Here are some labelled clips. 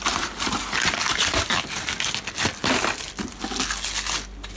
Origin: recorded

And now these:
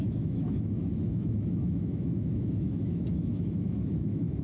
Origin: remade